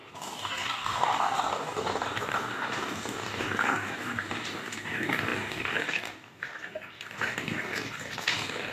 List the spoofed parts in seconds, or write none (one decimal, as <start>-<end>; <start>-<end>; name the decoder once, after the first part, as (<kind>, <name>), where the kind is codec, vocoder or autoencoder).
0.0-8.7 (codec, DAC)